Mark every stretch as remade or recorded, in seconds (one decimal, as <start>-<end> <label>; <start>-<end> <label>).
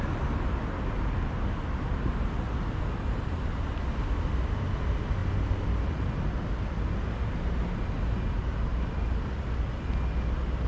0.0-10.7 recorded